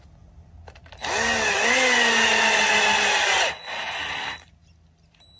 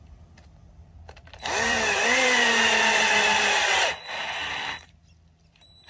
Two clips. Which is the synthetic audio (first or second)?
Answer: second